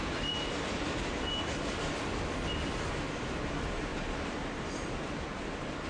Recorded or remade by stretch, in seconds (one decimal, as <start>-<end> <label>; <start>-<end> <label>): 0.0-5.9 recorded